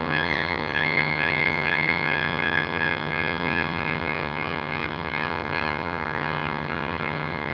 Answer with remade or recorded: remade